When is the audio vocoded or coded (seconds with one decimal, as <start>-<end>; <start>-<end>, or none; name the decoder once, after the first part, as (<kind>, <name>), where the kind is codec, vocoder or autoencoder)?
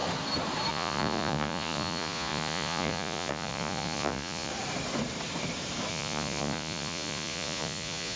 0.7-4.5 (vocoder, Vocos); 5.9-8.2